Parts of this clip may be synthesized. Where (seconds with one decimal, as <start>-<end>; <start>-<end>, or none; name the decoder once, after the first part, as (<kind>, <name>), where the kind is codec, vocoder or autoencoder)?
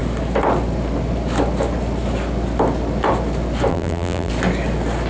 3.7-4.3 (vocoder, BigVGAN v2)